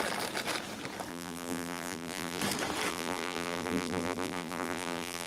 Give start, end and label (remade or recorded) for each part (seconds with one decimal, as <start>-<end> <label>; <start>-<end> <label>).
0.0-1.1 recorded; 1.1-2.4 remade; 2.4-2.9 recorded; 2.9-5.3 remade